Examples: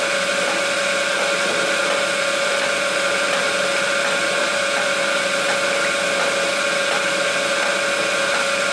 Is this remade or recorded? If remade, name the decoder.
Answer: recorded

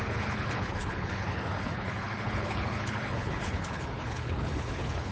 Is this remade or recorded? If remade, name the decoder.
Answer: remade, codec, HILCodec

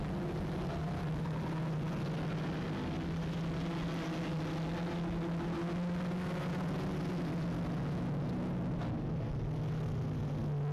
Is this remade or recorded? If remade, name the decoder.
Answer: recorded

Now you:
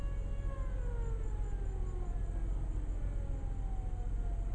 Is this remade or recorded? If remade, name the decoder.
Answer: recorded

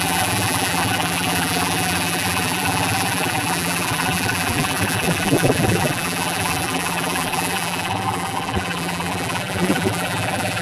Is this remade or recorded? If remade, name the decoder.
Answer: remade, vocoder, BigVGAN v2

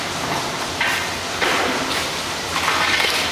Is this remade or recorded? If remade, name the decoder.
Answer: remade, vocoder, BigVGAN v2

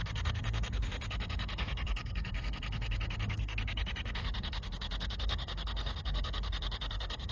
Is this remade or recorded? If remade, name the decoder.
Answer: remade, codec, SNAC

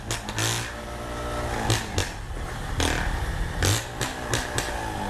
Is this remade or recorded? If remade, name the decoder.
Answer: recorded